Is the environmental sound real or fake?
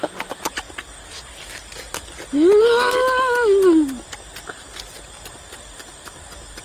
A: real